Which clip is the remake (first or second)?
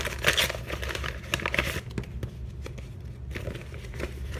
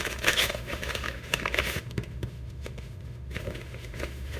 second